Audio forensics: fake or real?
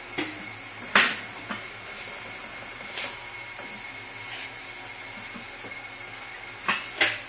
real